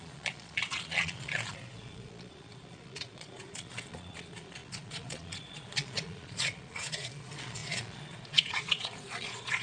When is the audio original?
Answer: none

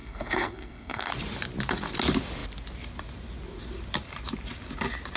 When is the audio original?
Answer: 1.1-5.2

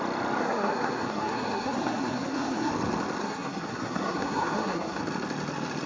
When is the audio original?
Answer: 0.0-0.4; 2.7-3.2; 5.0-5.9

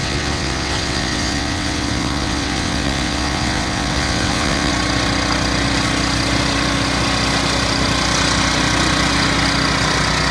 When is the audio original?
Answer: 4.7-10.3